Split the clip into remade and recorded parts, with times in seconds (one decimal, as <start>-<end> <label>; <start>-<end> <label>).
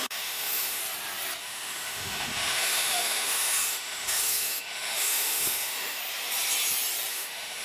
0.0-0.8 remade; 0.8-1.4 recorded; 1.4-6.0 remade; 6.0-7.1 recorded; 7.1-7.6 remade